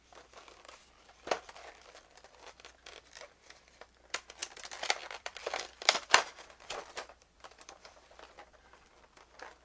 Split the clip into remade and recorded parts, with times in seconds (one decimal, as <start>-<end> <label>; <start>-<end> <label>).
0.0-9.6 remade